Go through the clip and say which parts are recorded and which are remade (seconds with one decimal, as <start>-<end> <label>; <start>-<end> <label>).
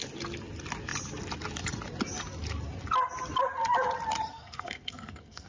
0.0-4.3 recorded; 4.3-5.5 remade